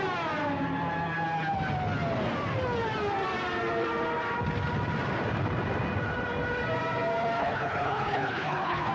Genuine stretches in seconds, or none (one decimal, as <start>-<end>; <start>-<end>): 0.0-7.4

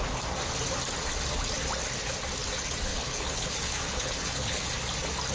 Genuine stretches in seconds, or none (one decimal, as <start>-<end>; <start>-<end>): 0.0-2.9; 4.7-5.3

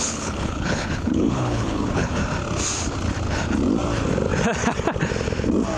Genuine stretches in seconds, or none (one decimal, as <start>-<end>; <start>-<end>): 2.2-5.8

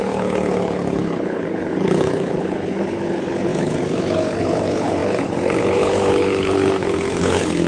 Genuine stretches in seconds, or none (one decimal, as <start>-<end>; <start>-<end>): none